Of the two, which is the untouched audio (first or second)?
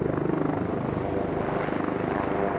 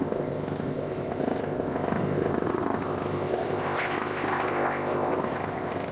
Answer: first